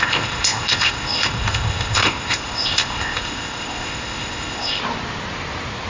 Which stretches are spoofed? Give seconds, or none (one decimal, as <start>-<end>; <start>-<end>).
0.0-4.8